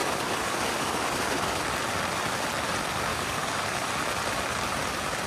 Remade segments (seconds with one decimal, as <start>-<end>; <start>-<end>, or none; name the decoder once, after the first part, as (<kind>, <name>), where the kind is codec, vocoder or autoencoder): 0.0-1.6 (codec, DAC); 3.1-3.9